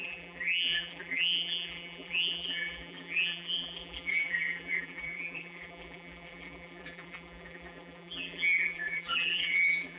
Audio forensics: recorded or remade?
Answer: remade